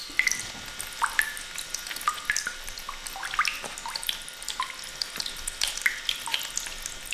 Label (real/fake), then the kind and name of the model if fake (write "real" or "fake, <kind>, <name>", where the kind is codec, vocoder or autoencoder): real